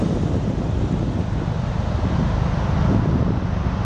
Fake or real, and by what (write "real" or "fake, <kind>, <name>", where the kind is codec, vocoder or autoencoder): real